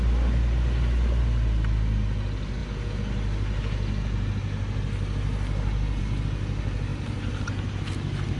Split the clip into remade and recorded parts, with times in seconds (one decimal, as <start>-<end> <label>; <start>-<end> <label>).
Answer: 0.0-8.4 recorded